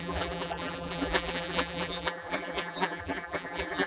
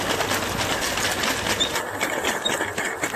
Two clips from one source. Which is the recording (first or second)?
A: second